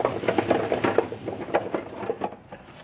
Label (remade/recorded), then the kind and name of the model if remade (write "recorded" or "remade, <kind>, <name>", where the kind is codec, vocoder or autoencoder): recorded